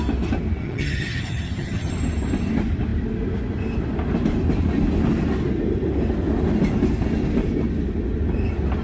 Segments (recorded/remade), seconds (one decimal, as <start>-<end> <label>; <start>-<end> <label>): 0.0-0.6 recorded; 0.6-1.9 remade; 1.9-8.8 recorded